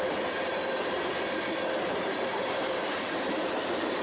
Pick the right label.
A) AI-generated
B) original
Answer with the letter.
B